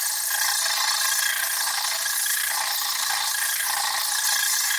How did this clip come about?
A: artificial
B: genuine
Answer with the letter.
B